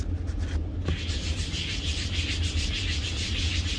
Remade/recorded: recorded